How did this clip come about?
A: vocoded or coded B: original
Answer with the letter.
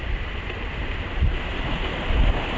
B